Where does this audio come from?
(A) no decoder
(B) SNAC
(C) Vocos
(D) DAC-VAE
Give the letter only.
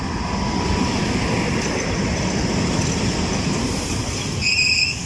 A